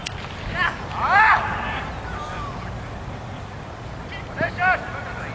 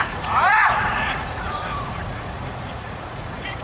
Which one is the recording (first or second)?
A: first